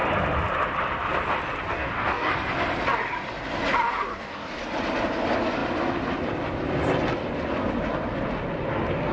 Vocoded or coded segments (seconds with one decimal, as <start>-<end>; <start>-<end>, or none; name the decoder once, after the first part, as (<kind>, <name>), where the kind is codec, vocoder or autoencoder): 1.7-2.3 (codec, DAC); 4.1-4.6